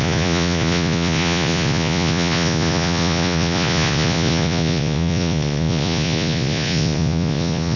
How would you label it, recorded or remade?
remade